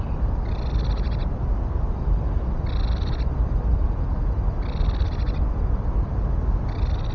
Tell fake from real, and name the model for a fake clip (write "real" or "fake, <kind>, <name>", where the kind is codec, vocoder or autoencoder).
real